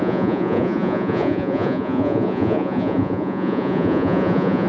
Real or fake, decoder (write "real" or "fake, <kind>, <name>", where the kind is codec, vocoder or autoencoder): fake, vocoder, Vocos